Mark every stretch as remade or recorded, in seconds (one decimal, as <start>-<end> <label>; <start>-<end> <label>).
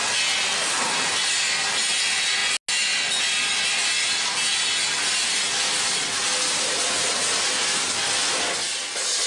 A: 0.0-9.3 recorded